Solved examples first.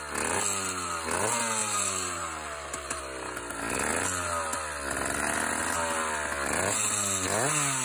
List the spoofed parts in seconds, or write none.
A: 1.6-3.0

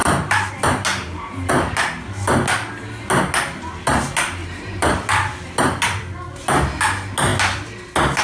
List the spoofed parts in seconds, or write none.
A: 0.0-0.5; 0.9-1.5; 4.4-4.9